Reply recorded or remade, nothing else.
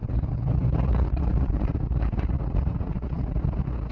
remade